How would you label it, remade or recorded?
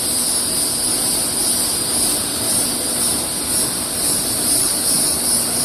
recorded